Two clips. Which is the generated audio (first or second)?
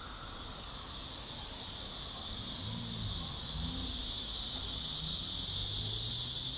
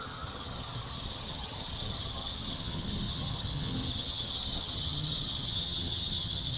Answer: second